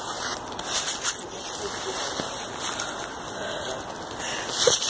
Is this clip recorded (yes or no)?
yes